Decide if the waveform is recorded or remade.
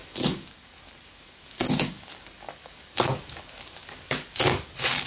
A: remade